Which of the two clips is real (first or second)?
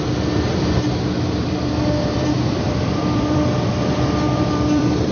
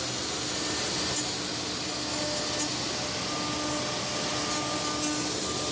second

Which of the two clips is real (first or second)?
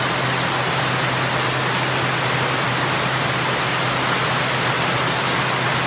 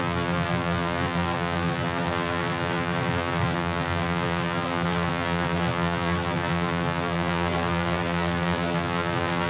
first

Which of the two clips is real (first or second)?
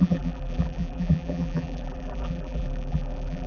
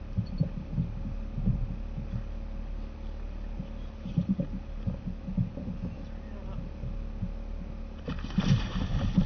second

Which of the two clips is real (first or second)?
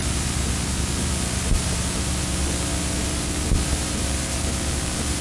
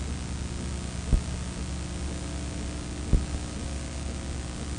second